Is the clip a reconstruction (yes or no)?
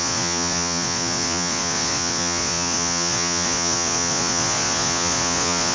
yes